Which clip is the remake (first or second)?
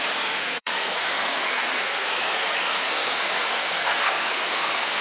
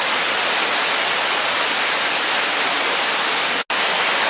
first